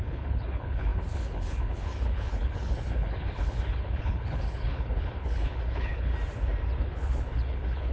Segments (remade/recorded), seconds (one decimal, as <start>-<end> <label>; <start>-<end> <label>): 0.0-6.1 remade; 6.1-6.8 recorded; 6.8-7.9 remade